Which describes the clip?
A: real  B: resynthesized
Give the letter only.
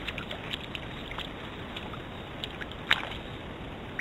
A